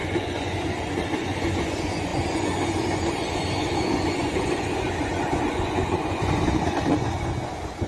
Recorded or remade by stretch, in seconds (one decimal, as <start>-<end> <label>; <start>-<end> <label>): 0.0-7.9 remade